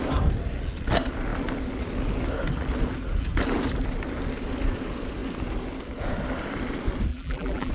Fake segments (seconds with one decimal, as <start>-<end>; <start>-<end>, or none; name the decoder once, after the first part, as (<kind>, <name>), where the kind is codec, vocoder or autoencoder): 7.1-7.7 (vocoder, BigVGAN v2)